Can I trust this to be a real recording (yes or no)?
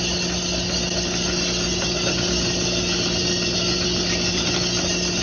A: yes